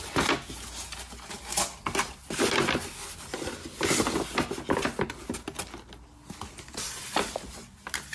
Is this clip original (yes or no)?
yes